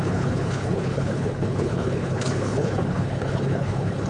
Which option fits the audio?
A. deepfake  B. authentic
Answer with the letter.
A